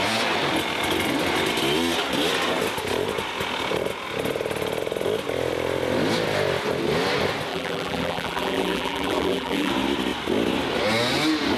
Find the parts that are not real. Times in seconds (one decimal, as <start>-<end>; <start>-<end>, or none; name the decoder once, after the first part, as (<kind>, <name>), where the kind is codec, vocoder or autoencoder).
7.5-9.7 (vocoder, BigVGAN v2)